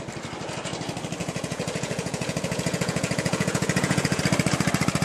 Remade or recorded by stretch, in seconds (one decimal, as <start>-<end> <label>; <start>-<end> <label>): 0.0-1.2 recorded; 1.2-4.2 remade; 4.2-5.0 recorded